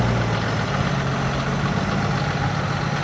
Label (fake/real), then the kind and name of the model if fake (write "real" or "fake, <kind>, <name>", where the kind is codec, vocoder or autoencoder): real